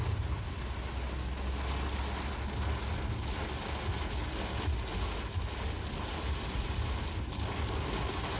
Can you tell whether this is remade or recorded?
recorded